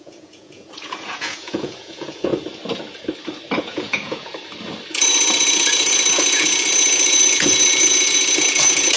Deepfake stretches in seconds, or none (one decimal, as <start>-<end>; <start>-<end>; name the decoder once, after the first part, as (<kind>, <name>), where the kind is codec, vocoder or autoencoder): 0.0-2.3 (vocoder, Vocos); 3.6-4.3; 4.9-9.0